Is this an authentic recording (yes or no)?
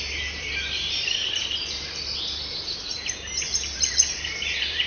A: no